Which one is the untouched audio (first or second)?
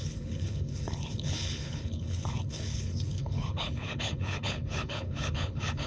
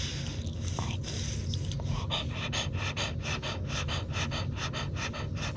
second